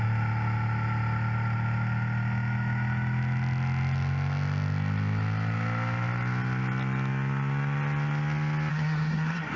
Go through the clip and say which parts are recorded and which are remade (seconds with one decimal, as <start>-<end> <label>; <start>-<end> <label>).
0.0-8.7 recorded; 8.7-9.6 remade